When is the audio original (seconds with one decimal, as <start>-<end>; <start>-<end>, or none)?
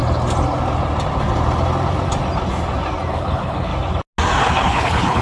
0.0-3.1; 3.7-4.4